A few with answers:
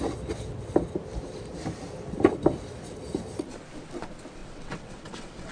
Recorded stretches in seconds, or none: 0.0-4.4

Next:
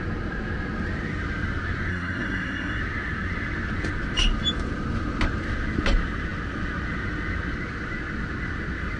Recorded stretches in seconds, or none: 0.0-1.9; 2.8-9.0

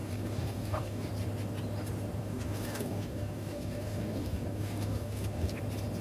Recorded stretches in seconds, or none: 1.1-2.2; 5.6-6.0

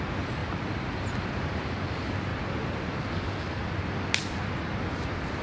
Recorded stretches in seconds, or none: 0.0-5.4

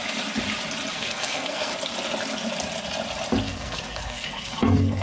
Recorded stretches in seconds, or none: 0.0-0.9; 1.7-3.4